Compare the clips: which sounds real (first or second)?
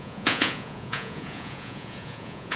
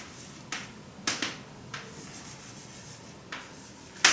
second